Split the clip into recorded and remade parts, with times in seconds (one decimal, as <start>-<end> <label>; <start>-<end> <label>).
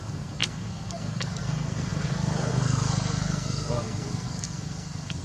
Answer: 0.0-5.2 remade